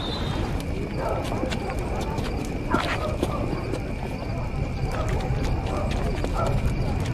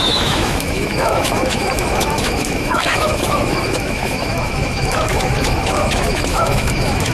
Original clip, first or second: first